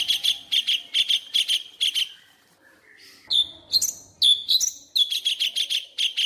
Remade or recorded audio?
recorded